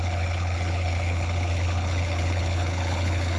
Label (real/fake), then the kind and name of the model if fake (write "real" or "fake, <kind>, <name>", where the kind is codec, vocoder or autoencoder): fake, codec, HILCodec